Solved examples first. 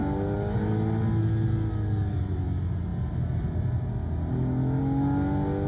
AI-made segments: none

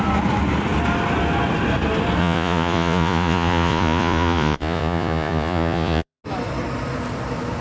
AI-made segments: 2.2-6.2 (vocoder, Vocos)

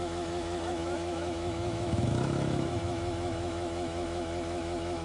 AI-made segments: 0.0-5.0 (autoencoder, DAC-VAE)

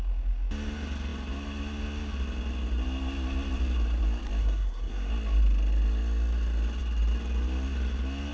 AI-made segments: 4.4-5.1 (codec, SNAC)

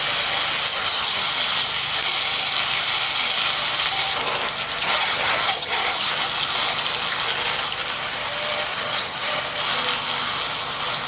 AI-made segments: 0.7-1.3 (vocoder, HiFi-GAN); 4.8-6.1; 8.7-9.4

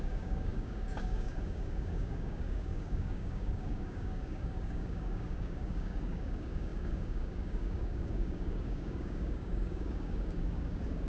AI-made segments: 0.0-11.1 (codec, DAC)

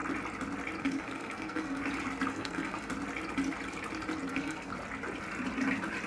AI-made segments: 0.8-1.8 (codec, SNAC); 2.3-2.9; 4.3-4.7